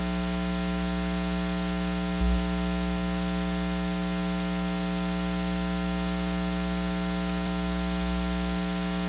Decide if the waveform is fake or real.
real